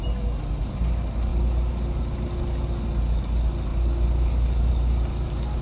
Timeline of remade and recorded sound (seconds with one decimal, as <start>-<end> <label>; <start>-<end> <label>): 0.0-5.6 recorded